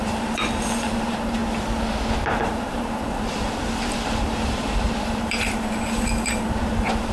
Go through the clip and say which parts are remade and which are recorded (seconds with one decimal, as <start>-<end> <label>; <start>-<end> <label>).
0.0-1.4 remade; 1.4-2.3 recorded; 2.3-7.1 remade